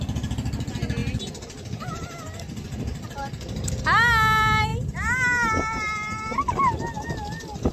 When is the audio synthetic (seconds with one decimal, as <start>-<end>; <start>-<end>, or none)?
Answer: none